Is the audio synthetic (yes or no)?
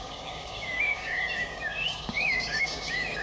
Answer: yes